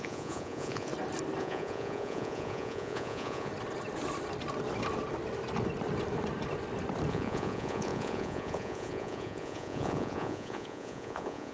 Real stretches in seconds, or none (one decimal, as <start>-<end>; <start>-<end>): 0.9-1.4; 3.5-7.1